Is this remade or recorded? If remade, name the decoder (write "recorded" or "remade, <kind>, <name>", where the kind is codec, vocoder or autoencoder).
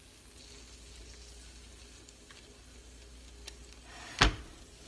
recorded